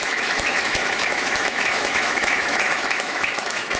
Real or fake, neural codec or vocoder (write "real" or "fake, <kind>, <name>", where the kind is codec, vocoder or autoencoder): fake, autoencoder, DAC-VAE